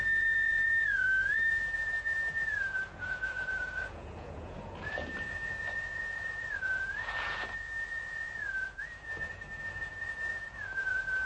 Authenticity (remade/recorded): remade